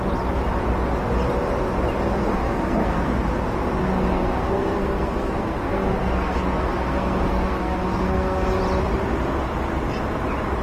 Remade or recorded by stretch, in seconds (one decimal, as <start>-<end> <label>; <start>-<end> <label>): 0.0-2.2 recorded; 2.2-3.2 remade; 3.2-3.8 recorded; 3.8-8.6 remade; 8.6-10.6 recorded